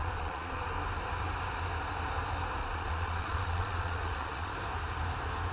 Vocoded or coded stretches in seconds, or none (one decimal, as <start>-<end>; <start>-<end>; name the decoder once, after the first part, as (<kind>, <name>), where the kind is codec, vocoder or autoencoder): 0.0-0.7 (vocoder, Vocos); 2.6-4.5